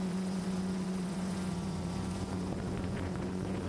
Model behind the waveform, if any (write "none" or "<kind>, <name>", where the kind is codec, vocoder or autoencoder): vocoder, Vocos